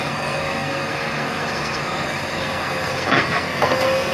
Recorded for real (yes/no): no